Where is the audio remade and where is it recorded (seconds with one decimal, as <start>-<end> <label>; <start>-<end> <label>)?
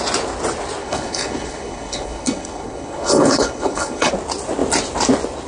0.0-0.8 recorded; 0.8-4.1 remade; 4.1-5.5 recorded